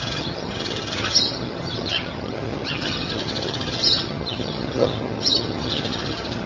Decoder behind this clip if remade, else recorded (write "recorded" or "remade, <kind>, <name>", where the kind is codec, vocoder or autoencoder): remade, vocoder, HiFi-GAN